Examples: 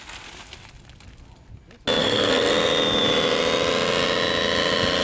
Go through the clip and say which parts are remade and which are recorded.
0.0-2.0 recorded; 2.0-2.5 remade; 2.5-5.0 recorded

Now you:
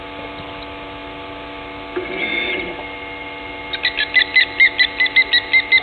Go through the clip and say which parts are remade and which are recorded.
0.0-5.8 recorded

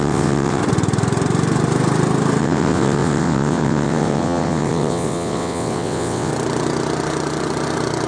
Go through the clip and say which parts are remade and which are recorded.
0.0-0.6 remade; 0.6-2.4 recorded; 2.4-6.3 remade; 6.3-8.1 recorded

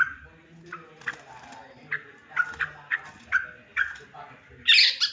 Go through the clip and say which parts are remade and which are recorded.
0.0-5.1 recorded

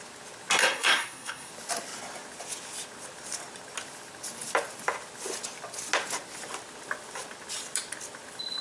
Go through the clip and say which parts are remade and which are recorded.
0.0-0.6 recorded; 0.6-1.5 remade; 1.5-8.6 recorded